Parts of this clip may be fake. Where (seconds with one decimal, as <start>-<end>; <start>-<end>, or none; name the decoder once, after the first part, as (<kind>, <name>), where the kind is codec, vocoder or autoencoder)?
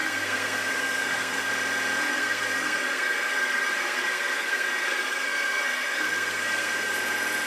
0.0-1.5 (codec, SNAC); 2.1-6.9